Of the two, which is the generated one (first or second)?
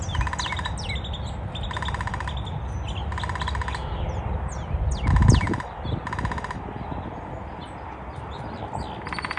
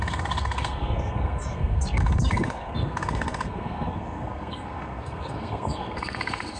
second